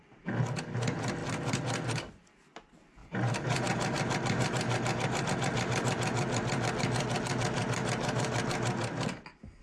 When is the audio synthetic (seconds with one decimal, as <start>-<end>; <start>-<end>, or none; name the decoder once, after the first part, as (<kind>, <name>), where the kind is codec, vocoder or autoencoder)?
3.0-5.2 (vocoder, BigVGAN v2)